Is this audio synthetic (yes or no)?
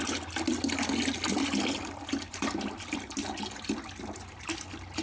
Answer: no